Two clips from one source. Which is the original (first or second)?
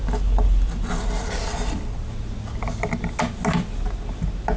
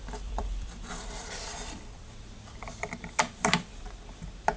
first